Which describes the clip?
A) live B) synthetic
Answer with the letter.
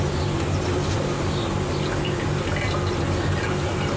A